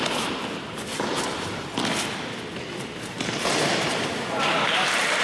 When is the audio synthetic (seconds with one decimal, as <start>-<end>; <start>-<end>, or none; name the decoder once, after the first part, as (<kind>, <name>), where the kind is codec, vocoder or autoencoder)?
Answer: 0.0-0.9 (vocoder, BigVGAN v2); 2.8-5.2